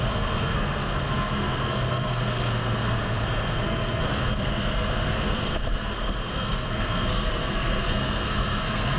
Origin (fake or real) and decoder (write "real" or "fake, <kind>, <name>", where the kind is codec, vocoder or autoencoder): fake, codec, SNAC